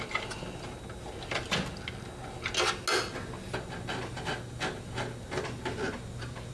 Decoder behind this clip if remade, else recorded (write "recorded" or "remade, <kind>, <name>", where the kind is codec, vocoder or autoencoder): recorded